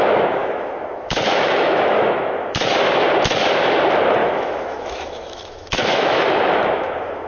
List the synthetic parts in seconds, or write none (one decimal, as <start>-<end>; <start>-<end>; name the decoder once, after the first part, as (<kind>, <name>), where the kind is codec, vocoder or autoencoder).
0.4-2.7 (autoencoder, DAC-VAE); 4.2-7.3